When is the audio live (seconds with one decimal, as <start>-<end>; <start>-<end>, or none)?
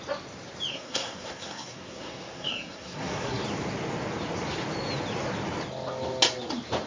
0.0-0.7; 3.4-6.9